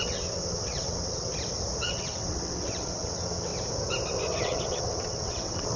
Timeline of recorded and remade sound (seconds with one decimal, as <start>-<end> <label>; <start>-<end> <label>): 0.0-1.3 remade; 1.3-1.8 recorded; 1.8-3.5 remade; 3.5-4.4 recorded; 4.4-5.8 remade